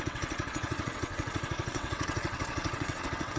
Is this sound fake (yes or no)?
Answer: yes